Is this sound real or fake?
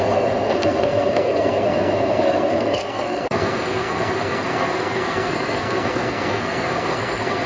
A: fake